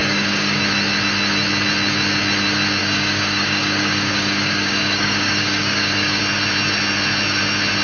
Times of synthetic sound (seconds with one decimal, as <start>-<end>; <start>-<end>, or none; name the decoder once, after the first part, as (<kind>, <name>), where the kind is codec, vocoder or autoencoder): 0.0-0.6 (codec, DAC); 2.8-6.2